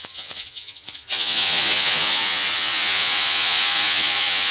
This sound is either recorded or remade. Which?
remade